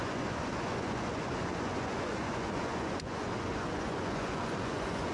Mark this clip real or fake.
fake